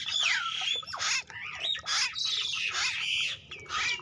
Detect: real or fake real